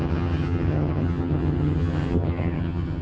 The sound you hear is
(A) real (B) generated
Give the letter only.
B